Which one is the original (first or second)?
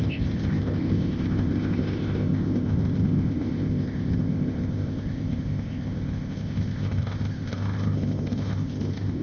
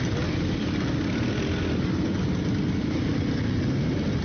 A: second